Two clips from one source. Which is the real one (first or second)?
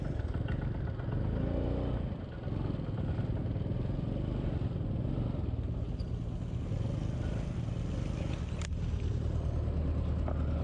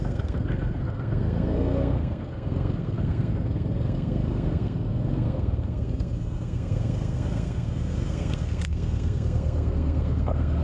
first